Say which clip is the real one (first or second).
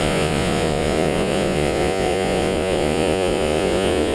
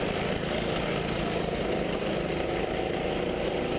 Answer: second